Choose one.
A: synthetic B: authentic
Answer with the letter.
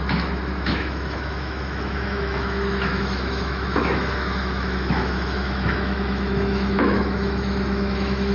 A